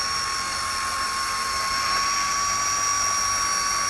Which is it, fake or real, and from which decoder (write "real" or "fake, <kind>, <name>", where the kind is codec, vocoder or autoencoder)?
real